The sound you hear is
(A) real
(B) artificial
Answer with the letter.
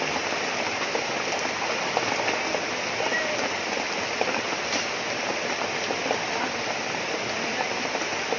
A